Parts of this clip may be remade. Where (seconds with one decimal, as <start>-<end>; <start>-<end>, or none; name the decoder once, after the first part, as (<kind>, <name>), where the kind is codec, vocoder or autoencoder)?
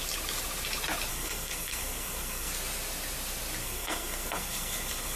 1.1-2.5 (codec, SNAC); 3.6-5.2